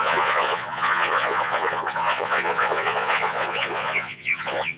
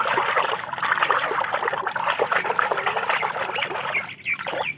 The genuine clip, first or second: second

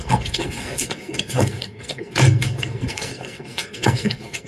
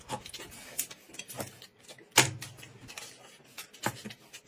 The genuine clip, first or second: second